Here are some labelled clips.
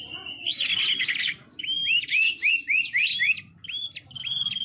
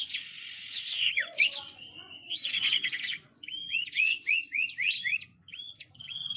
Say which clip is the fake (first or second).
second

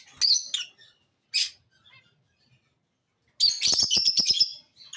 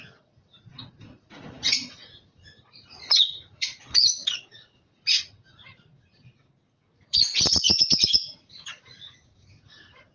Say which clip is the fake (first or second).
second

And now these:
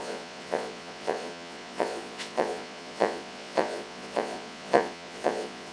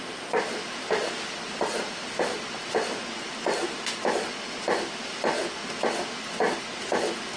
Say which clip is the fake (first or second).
first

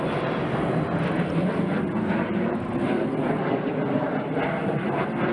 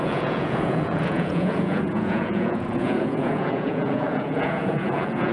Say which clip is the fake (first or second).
second